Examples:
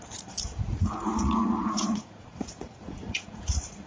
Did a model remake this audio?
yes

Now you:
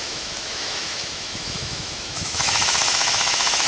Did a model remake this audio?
yes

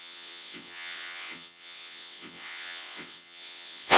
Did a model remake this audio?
yes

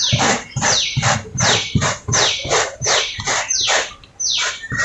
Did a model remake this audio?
yes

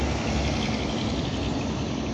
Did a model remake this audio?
no